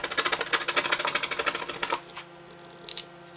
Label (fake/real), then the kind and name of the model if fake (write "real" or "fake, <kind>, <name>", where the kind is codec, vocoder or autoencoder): real